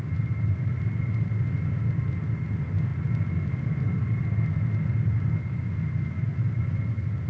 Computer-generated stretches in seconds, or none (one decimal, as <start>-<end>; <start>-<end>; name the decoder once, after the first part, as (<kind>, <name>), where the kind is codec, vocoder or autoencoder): none